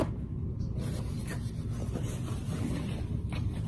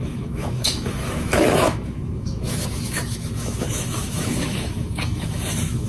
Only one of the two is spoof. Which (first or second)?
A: second